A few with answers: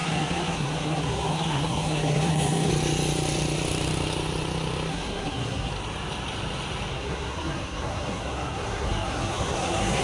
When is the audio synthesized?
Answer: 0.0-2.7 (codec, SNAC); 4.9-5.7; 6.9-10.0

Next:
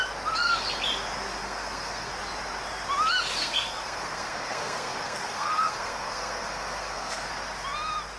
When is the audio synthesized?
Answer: 1.4-2.1 (codec, SNAC); 3.4-7.3

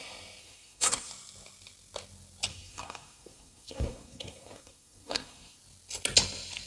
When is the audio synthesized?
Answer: 0.4-1.1 (codec, SNAC); 2.5-5.6